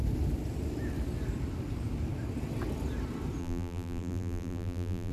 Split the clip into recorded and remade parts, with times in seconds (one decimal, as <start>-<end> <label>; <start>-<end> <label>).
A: 0.0-3.4 recorded; 3.4-5.1 remade